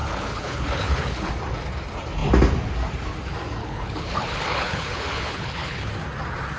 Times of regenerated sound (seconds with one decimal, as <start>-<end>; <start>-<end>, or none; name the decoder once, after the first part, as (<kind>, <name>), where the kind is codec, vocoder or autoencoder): 0.0-1.3 (codec, HILCodec); 3.6-5.9